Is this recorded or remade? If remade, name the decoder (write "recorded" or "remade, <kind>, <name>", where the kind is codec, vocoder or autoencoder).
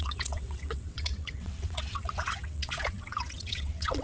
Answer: remade, vocoder, WaveNeXt